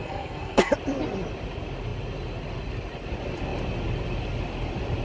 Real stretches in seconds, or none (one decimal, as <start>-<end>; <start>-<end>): 0.7-5.0